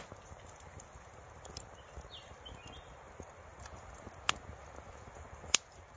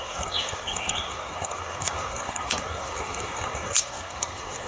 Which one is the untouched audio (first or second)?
first